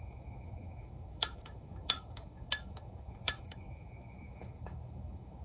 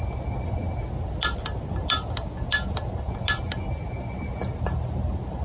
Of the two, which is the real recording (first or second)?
second